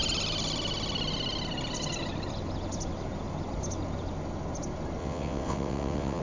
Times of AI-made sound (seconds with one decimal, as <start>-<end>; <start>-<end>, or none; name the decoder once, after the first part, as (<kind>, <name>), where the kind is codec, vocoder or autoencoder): 5.0-6.2 (vocoder, WaveNeXt)